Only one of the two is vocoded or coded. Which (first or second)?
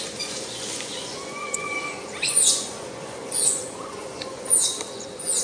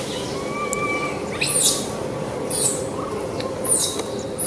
first